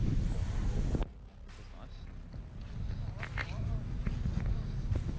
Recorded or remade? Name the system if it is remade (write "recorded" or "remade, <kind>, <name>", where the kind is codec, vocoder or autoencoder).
recorded